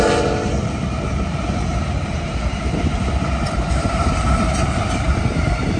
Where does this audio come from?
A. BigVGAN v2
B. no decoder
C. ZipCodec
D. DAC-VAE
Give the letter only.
A